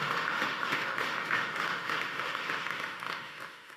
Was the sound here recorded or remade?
remade